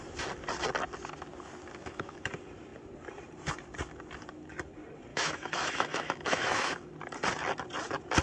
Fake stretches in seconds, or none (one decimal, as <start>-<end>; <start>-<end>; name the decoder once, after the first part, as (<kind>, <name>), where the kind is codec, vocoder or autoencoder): 1.8-2.3 (autoencoder, DAC-VAE); 5.1-6.9